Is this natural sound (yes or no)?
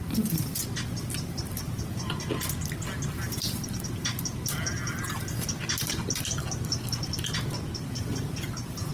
yes